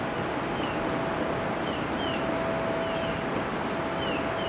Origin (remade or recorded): recorded